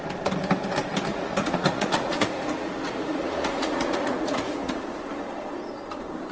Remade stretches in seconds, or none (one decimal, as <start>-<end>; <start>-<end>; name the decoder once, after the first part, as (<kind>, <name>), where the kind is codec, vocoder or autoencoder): 1.1-4.8 (vocoder, Vocos)